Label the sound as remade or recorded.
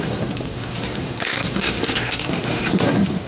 remade